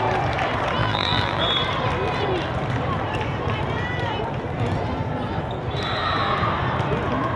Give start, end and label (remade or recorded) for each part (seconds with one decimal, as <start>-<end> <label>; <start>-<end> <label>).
0.0-0.8 recorded; 0.8-1.4 remade; 1.4-7.4 recorded